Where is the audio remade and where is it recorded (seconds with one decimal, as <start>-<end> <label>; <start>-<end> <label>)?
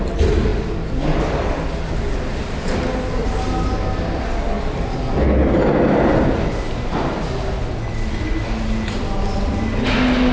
0.0-10.3 recorded